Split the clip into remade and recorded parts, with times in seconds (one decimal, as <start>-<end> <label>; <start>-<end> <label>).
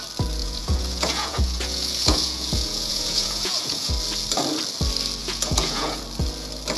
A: 0.0-0.4 recorded; 0.4-3.9 remade; 3.9-5.2 recorded; 5.2-6.0 remade; 6.0-6.8 recorded